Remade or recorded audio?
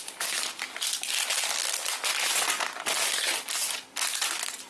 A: recorded